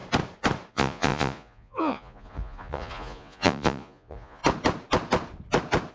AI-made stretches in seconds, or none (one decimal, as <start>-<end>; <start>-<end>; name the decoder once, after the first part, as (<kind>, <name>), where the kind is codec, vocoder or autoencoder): 0.7-4.4 (vocoder, Vocos)